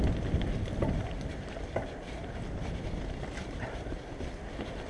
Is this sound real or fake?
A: real